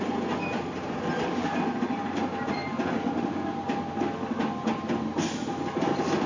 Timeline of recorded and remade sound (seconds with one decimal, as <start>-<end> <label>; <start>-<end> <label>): 0.0-6.3 recorded